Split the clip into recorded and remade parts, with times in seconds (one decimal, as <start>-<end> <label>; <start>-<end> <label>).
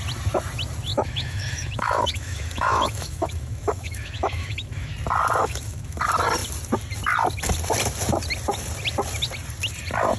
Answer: 0.0-0.9 recorded; 0.9-4.9 remade; 4.9-5.4 recorded; 5.4-6.0 remade; 6.0-10.2 recorded